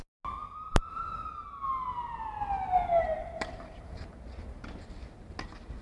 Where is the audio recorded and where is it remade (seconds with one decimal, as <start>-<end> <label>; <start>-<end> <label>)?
0.0-0.4 recorded; 0.4-1.0 remade; 1.0-3.2 recorded; 3.2-4.0 remade; 4.0-5.8 recorded